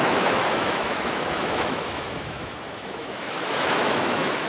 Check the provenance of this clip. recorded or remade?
remade